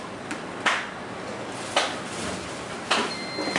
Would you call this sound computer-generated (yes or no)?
no